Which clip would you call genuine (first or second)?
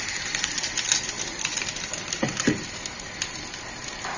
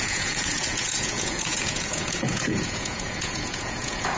first